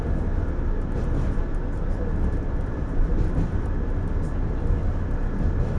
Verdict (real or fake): real